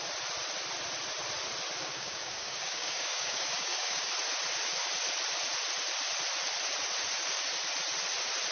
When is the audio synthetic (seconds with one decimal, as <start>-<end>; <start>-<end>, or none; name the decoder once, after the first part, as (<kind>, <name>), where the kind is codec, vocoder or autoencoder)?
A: 1.8-4.1 (codec, DAC)